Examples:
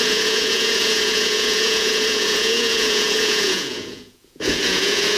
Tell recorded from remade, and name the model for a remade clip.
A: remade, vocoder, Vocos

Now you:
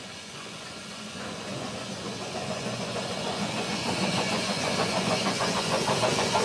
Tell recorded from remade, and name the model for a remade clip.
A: remade, vocoder, Vocos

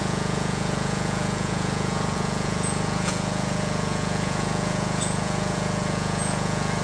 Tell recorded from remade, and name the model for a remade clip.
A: remade, vocoder, Vocos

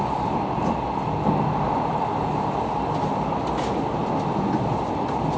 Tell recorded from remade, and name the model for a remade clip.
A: recorded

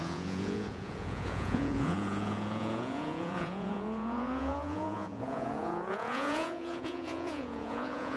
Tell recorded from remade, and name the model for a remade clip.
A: remade, vocoder, Vocos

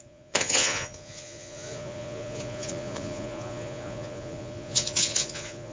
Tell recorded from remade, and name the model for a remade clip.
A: remade, vocoder, Vocos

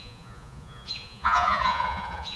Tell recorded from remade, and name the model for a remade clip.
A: remade, vocoder, Vocos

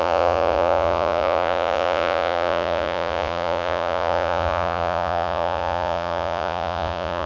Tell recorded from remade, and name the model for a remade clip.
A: remade, vocoder, Vocos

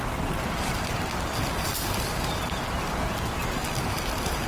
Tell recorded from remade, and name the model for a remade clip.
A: recorded